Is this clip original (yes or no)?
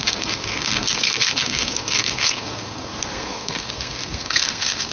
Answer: no